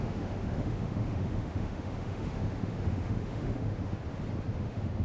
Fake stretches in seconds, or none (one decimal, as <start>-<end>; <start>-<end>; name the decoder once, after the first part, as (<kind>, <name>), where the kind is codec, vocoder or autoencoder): 0.0-4.0 (autoencoder, DAC-VAE); 4.5-5.0